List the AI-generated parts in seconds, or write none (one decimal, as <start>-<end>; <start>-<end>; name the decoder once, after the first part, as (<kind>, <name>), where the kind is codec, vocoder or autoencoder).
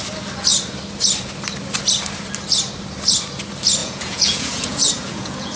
3.8-5.6 (vocoder, Vocos)